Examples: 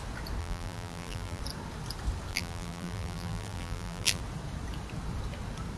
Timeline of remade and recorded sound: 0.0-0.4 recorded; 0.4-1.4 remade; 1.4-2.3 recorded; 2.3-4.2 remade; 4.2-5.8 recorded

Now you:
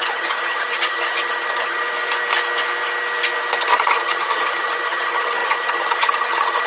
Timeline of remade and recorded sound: 0.0-1.8 remade; 1.8-3.6 recorded; 3.6-6.7 remade

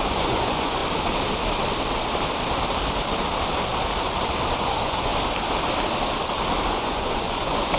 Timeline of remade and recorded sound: 0.0-0.8 remade; 0.8-4.6 recorded; 4.6-5.1 remade; 5.1-6.7 recorded; 6.7-7.8 remade

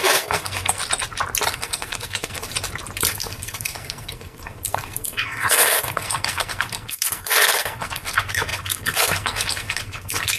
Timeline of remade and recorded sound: 0.0-0.8 remade; 0.8-1.5 recorded; 1.5-2.5 remade; 2.5-3.1 recorded; 3.1-10.4 remade

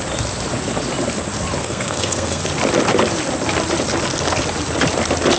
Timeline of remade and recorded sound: 0.0-1.6 recorded; 1.6-2.4 remade; 2.4-5.4 recorded

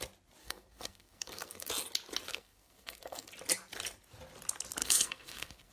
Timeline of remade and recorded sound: 0.0-0.4 recorded; 0.4-1.7 remade; 1.7-2.3 recorded; 2.3-3.3 remade; 3.3-4.8 recorded; 4.8-5.7 remade